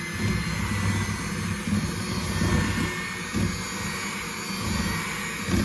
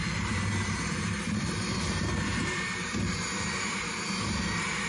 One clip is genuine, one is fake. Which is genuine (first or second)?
first